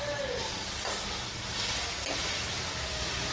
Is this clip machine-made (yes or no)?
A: no